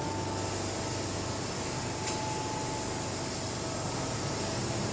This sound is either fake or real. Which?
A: real